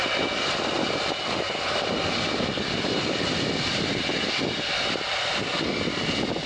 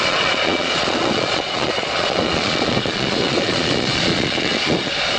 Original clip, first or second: first